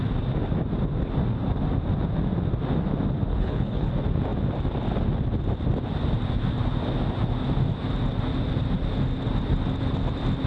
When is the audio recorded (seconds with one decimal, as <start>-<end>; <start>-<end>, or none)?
0.0-3.3; 3.9-10.5

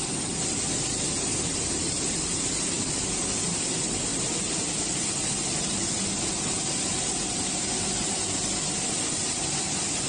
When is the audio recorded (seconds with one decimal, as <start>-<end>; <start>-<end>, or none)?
0.0-10.1

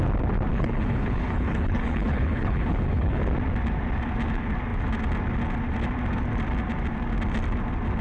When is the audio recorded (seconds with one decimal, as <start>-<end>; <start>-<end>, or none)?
0.0-0.5; 3.2-8.0

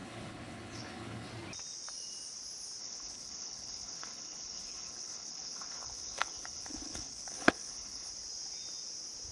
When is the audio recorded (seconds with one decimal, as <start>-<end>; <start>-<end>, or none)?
1.3-2.8; 8.1-9.3

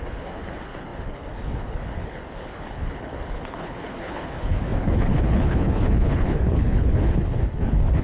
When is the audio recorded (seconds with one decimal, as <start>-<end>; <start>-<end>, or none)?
none

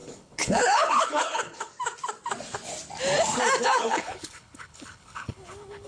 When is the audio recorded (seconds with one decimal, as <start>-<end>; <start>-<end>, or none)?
1.7-3.6